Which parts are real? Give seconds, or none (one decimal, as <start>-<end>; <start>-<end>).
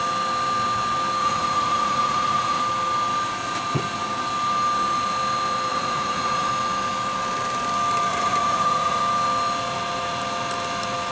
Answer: 0.0-1.2; 2.6-5.7; 6.5-8.1; 9.0-11.1